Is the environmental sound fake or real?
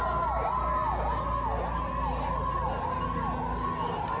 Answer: real